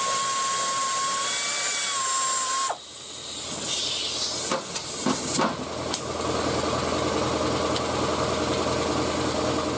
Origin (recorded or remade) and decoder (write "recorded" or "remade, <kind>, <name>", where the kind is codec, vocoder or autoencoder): recorded